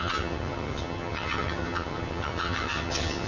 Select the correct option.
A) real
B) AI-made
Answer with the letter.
B